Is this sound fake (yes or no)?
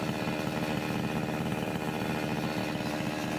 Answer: no